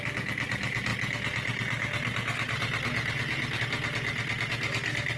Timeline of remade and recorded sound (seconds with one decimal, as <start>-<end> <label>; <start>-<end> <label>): 0.0-5.2 recorded

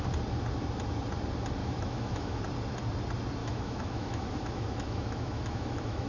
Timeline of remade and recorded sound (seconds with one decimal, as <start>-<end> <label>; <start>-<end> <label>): 0.0-1.6 recorded; 1.6-2.4 remade; 2.4-3.4 recorded; 3.4-6.1 remade